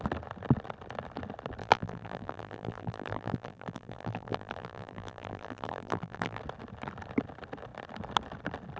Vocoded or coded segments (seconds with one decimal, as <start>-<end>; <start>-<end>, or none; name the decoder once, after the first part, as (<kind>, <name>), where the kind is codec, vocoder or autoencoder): 1.6-6.4 (vocoder, BigVGAN v2)

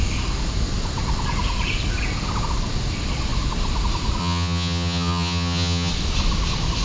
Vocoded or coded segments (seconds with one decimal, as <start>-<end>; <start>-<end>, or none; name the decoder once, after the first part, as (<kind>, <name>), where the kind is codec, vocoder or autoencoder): 4.2-5.9 (vocoder, HiFi-GAN)

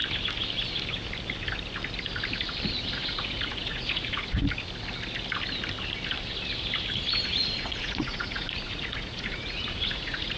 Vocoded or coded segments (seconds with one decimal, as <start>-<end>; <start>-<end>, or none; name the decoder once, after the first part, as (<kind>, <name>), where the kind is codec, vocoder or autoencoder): 2.9-4.4 (vocoder, Vocos); 7.2-10.4

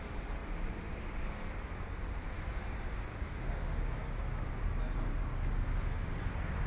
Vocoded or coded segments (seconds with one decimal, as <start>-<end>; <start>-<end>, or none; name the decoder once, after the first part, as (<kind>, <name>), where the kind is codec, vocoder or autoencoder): 3.1-4.2 (codec, DAC); 5.1-6.2

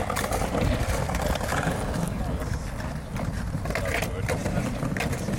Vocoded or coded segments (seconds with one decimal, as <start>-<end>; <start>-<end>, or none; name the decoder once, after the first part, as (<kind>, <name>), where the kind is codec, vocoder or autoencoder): 1.5-2.2 (codec, DAC)

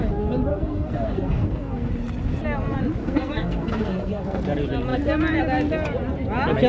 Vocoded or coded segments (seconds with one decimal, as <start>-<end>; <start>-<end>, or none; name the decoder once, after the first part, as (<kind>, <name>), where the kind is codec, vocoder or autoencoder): 0.5-1.9 (codec, SNAC); 3.0-4.4

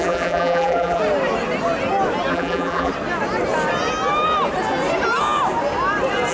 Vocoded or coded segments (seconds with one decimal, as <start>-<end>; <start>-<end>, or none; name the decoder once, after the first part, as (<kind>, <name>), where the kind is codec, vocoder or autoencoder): 0.0-1.0 (vocoder, BigVGAN v2); 2.3-2.9

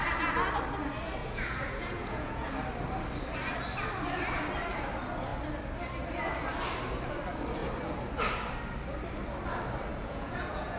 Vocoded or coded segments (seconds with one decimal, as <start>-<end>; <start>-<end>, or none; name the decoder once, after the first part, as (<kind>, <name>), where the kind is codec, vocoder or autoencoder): 1.2-2.5 (vocoder, Vocos); 9.9-10.8